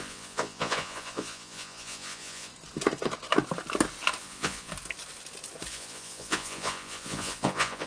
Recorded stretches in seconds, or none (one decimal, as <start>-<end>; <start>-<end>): 2.5-4.2; 4.7-5.7